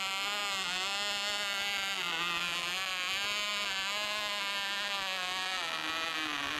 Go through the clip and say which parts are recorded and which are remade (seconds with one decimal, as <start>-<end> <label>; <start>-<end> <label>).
0.0-6.6 recorded